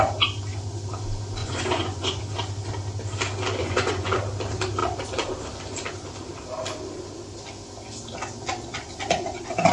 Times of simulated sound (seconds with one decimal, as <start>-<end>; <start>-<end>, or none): 1.4-2.2; 3.6-4.2

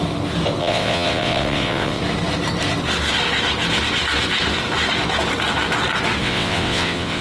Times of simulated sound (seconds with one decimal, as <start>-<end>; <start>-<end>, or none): 0.6-2.0; 6.2-7.2

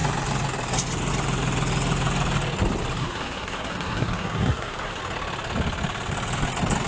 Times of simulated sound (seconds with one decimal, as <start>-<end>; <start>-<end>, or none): 3.0-5.0